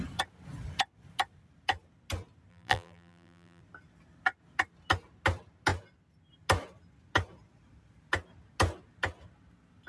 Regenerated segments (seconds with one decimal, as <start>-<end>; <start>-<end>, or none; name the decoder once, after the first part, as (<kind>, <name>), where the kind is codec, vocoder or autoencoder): 2.5-3.6 (vocoder, BigVGAN v2)